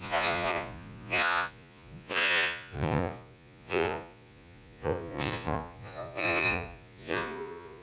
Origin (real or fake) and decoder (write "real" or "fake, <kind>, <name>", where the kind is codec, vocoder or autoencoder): fake, vocoder, Vocos